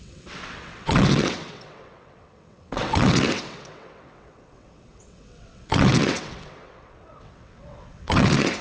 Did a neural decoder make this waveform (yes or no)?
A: yes